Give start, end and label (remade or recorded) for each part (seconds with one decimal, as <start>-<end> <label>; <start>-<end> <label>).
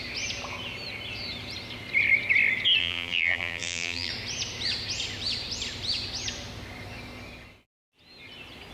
0.0-2.8 recorded; 2.8-4.1 remade; 4.1-8.7 recorded